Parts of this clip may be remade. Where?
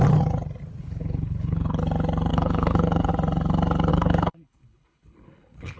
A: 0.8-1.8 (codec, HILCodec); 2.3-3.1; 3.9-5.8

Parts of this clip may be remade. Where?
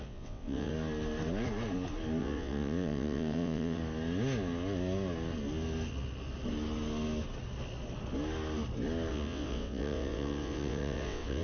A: 0.0-0.7 (vocoder, WaveNeXt); 2.2-3.8; 9.1-11.4